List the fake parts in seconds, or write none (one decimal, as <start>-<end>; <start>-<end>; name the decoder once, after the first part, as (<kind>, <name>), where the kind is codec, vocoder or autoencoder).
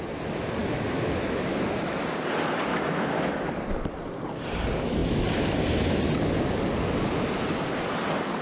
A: 0.6-2.0 (autoencoder, DAC-VAE); 2.7-3.3